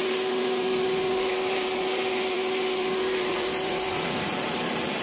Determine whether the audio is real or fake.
real